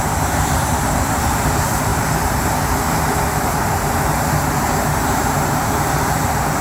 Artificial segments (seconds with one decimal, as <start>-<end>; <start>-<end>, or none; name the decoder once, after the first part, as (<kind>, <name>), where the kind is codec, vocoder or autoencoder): 0.0-6.6 (vocoder, BigVGAN v2)